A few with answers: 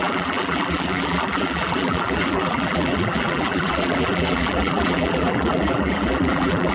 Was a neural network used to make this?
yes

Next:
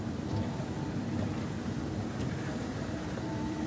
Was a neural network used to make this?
no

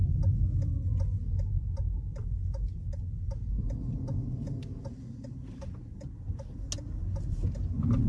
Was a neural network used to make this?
no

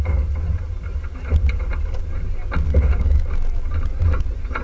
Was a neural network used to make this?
no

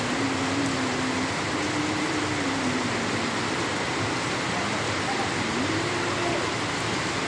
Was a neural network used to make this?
no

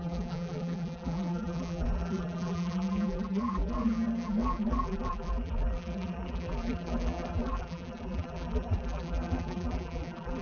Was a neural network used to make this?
yes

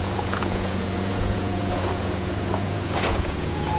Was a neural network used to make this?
yes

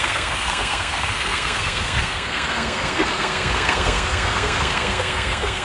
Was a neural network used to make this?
yes